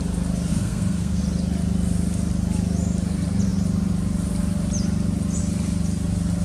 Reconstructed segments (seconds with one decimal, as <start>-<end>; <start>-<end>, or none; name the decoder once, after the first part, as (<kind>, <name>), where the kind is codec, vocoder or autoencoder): 0.5-1.2 (codec, SNAC)